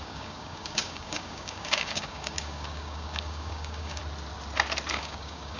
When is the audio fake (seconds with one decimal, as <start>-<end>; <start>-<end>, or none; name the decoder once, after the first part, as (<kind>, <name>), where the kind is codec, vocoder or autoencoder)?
0.0-4.0 (codec, DAC); 4.9-5.6